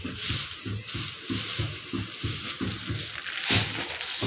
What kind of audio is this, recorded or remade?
recorded